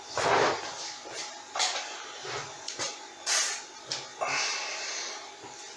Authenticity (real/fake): real